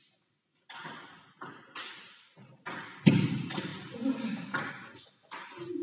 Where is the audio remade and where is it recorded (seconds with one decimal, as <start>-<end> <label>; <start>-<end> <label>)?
0.0-5.8 recorded